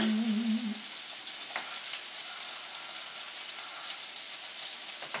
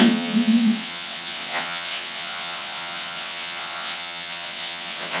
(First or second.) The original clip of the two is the first